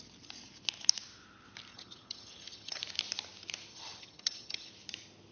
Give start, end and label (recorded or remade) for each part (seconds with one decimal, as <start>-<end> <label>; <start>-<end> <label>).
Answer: 0.0-1.7 recorded; 1.7-2.8 remade; 2.8-3.7 recorded; 3.7-4.7 remade; 4.7-5.3 recorded